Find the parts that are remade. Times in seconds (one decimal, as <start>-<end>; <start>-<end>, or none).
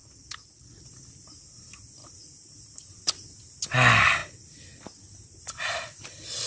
none